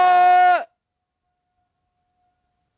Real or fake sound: real